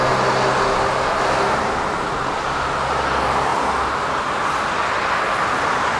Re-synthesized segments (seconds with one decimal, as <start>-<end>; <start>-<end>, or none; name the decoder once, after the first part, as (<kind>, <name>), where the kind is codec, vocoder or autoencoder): none